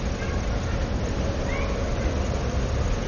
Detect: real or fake real